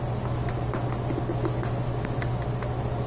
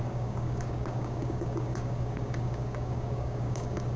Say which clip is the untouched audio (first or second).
first